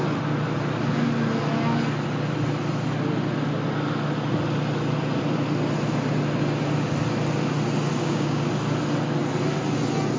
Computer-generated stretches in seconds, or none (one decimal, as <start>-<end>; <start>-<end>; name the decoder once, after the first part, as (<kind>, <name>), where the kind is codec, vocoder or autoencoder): 8.0-8.5 (codec, DAC)